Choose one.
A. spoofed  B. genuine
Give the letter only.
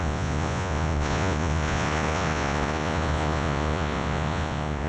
A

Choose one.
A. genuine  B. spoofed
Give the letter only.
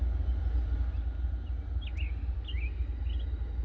A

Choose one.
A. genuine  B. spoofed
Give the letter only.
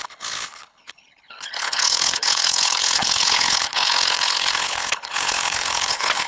B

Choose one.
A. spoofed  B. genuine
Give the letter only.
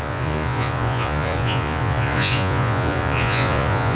A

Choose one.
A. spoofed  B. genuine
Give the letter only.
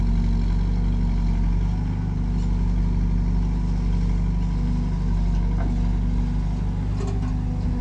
B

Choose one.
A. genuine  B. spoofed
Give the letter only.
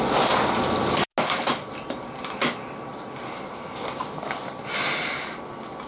A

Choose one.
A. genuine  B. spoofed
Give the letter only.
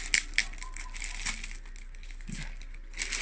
A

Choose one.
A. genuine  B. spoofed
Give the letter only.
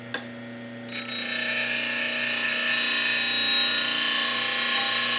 A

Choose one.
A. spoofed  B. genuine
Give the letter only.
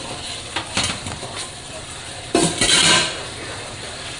A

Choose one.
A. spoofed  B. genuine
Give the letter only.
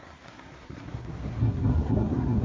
A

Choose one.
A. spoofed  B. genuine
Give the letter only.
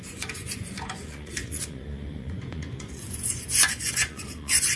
A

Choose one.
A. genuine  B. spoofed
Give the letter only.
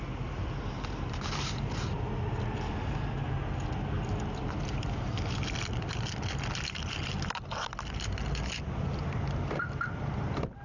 A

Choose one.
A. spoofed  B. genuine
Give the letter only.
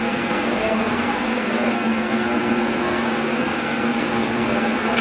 A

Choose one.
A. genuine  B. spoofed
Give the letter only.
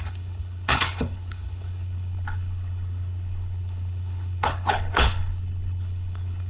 B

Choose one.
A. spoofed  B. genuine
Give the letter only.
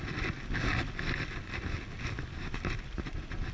B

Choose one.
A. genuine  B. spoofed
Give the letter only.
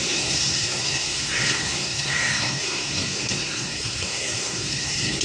B